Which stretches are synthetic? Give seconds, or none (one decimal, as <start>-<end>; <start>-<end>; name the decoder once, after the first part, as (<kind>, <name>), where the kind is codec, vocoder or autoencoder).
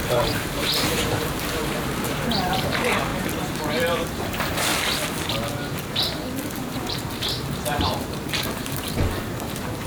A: 0.0-4.7 (vocoder, BigVGAN v2); 6.9-9.9